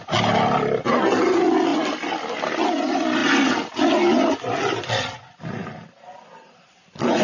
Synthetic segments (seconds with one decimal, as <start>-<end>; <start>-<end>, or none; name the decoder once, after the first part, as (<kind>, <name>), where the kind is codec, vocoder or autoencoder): none